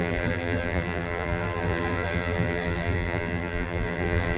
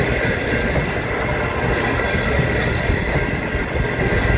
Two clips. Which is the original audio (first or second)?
second